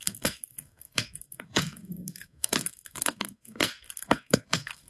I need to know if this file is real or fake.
fake